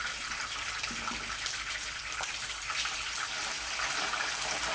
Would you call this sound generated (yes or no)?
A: no